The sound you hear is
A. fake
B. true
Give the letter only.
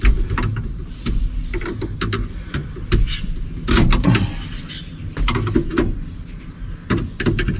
B